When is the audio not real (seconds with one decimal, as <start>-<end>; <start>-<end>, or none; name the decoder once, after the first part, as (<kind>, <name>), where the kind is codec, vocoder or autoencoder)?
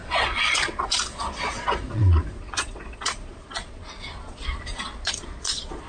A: 0.0-5.9 (vocoder, Vocos)